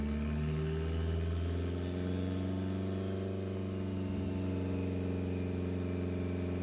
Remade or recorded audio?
recorded